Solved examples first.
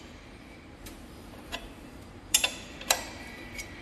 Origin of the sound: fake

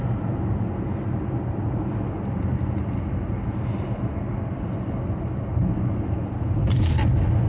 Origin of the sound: real